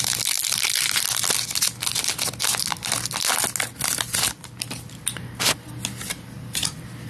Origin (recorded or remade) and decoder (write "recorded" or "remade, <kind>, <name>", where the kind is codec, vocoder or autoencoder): recorded